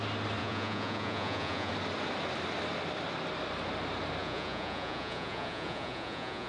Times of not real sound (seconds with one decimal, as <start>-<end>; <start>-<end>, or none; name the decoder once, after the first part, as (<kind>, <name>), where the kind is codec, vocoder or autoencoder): 0.4-1.7 (vocoder, Vocos); 4.2-6.5